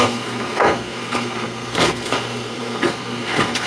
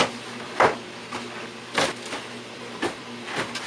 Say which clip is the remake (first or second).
first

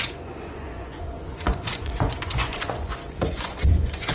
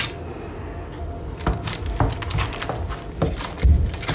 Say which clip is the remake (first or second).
first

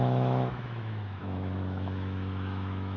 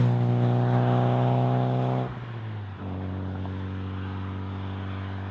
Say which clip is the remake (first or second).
first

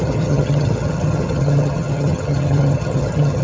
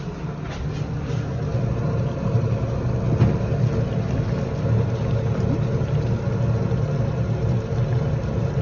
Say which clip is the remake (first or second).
first